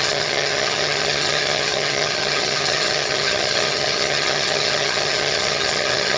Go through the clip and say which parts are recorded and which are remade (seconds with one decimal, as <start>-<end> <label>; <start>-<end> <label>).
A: 0.0-6.2 remade